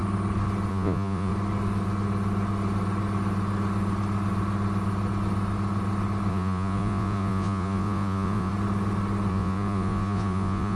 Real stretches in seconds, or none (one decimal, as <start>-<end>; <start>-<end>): 0.0-0.7; 1.3-6.3; 8.5-9.3

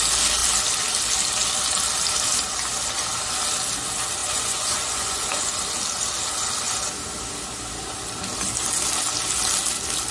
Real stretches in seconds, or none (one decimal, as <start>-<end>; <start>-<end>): 0.0-4.2; 5.5-10.1

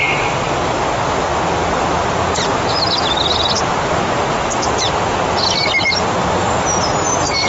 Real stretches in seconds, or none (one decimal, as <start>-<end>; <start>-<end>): 0.0-7.5

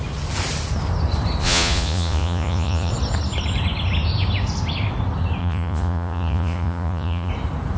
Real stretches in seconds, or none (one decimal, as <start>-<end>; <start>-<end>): 0.0-1.4; 2.9-5.4; 7.3-7.8

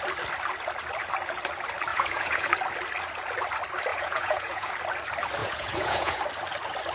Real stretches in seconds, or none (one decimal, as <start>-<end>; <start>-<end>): 0.0-1.9; 2.5-3.9; 4.7-5.4; 6.2-6.9

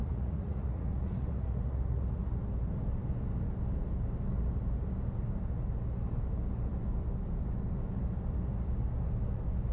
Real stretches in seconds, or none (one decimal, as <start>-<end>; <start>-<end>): 2.3-9.7

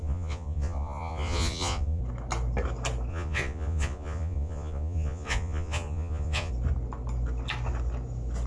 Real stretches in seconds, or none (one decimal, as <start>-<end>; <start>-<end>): 2.0-3.1; 6.5-8.5

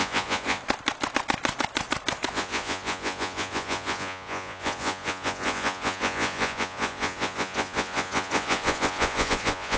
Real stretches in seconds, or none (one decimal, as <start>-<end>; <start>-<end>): 0.6-2.3